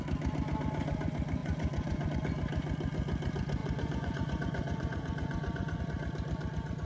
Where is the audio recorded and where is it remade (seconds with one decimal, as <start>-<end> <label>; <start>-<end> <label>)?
0.0-1.4 recorded; 1.4-2.1 remade; 2.1-3.6 recorded; 3.6-5.8 remade; 5.8-6.9 recorded